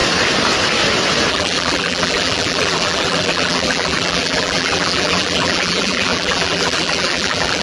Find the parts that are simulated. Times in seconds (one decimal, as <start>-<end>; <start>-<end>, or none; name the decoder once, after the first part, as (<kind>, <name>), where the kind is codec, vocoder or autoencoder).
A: 1.3-7.6 (vocoder, BigVGAN v2)